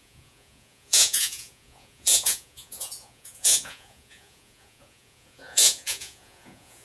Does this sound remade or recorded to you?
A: remade